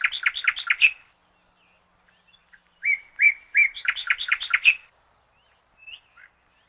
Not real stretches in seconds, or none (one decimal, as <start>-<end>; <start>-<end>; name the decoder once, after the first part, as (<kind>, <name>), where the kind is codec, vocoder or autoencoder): 2.4-4.5 (vocoder, BigVGAN v2)